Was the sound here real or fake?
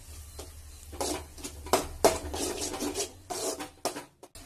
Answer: real